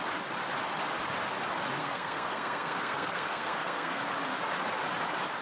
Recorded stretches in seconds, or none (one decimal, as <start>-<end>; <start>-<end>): 0.0-1.8; 4.0-5.4